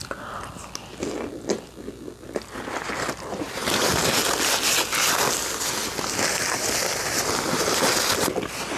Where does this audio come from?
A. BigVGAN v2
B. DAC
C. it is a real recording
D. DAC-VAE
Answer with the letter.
C